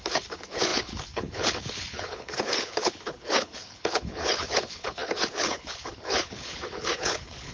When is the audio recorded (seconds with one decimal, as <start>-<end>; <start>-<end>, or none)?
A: none